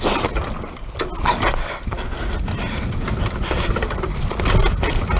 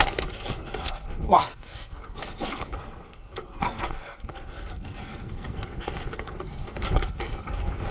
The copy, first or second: second